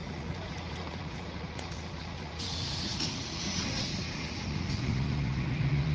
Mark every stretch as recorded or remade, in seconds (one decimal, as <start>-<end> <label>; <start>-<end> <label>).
0.0-5.9 remade